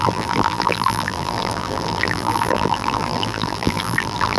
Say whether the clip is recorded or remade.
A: remade